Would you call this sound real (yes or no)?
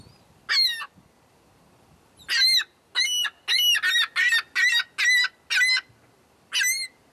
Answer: yes